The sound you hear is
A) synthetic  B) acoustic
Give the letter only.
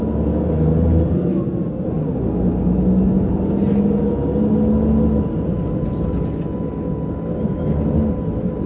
B